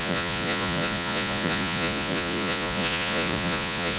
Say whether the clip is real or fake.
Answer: fake